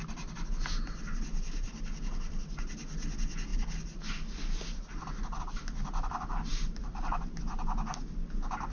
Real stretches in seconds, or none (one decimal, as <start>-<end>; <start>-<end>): 0.0-6.5; 7.6-8.7